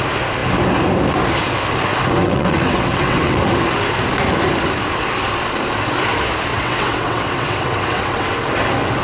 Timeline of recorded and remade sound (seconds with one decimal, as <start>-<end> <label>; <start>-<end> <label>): 0.0-2.2 recorded; 2.2-3.4 remade; 3.4-6.5 recorded; 6.5-8.3 remade; 8.3-9.0 recorded